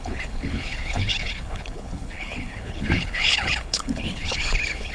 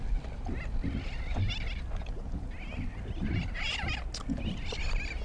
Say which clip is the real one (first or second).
second